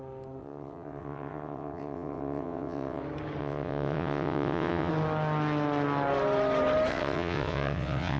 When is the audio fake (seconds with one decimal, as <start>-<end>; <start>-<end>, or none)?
0.4-3.0; 3.4-4.9; 6.9-8.2